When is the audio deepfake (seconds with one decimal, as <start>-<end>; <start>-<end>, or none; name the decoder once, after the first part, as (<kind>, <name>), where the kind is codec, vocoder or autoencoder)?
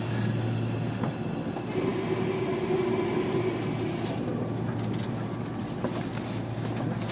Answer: none